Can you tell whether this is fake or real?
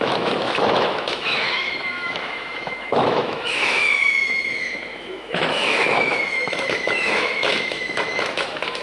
fake